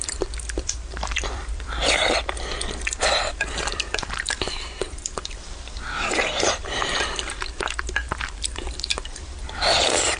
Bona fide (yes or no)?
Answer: no